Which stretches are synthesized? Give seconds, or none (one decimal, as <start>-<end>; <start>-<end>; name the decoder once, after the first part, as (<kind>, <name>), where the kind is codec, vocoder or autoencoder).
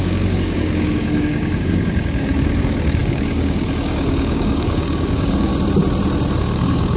0.0-5.5 (codec, DAC); 6.4-7.0